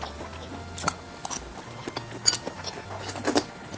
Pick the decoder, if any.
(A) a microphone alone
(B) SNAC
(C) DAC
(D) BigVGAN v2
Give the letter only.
A